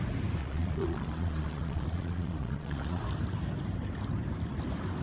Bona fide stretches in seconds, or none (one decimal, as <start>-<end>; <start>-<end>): 0.0-0.4; 3.0-5.0